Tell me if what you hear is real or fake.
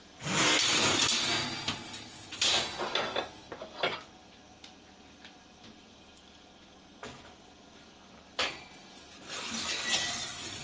real